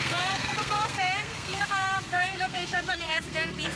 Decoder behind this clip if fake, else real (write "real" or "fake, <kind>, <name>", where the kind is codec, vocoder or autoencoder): fake, codec, SNAC